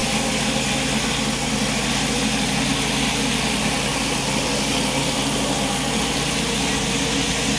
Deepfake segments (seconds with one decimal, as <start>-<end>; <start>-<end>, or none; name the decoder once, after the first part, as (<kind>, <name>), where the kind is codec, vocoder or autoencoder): none